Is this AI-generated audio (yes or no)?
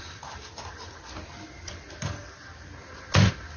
no